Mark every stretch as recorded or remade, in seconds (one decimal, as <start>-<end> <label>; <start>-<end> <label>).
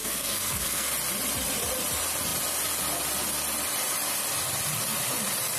0.0-0.9 remade; 0.9-5.6 recorded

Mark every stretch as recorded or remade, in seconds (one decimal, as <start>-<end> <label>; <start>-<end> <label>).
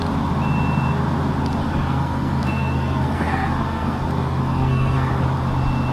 0.0-1.6 recorded; 1.6-5.1 remade; 5.1-5.9 recorded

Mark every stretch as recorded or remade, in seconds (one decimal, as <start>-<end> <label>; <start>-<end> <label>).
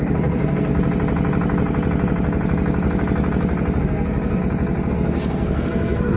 0.0-0.7 remade; 0.7-3.8 recorded; 3.8-4.4 remade; 4.4-4.9 recorded; 4.9-6.2 remade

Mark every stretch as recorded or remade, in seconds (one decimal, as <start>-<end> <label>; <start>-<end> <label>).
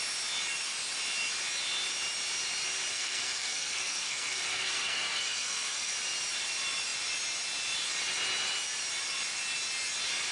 0.0-2.9 recorded; 2.9-5.9 remade; 5.9-10.3 recorded